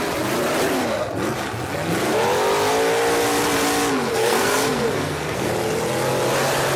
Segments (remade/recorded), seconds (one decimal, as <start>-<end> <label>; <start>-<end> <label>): 0.0-4.1 recorded; 4.1-5.5 remade; 5.5-6.8 recorded